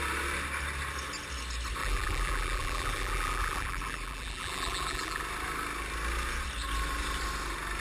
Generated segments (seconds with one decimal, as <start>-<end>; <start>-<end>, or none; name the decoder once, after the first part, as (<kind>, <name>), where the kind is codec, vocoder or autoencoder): 1.8-5.2 (vocoder, BigVGAN v2)